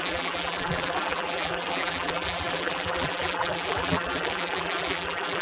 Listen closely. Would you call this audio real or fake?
fake